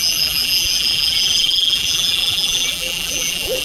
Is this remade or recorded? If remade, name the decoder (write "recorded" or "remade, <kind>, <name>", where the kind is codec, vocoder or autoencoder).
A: remade, vocoder, BigVGAN v2